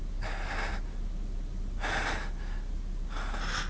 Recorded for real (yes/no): yes